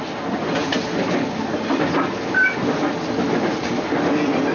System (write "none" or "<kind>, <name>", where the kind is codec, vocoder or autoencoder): none